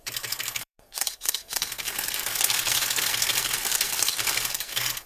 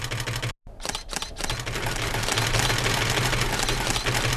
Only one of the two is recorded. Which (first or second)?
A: second